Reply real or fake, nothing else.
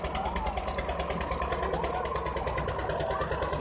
real